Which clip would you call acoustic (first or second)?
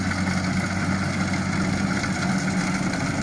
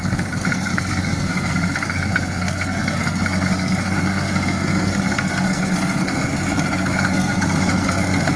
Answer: first